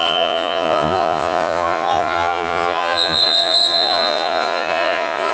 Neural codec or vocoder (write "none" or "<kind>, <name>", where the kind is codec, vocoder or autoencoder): vocoder, Vocos